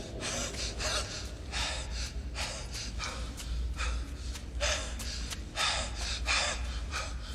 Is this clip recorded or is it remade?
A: recorded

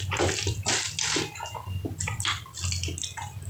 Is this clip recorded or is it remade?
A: remade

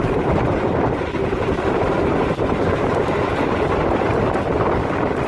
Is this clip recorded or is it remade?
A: remade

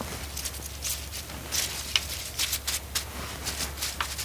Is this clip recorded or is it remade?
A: recorded